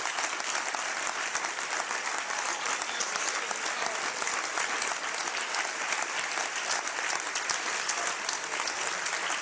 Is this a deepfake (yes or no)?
no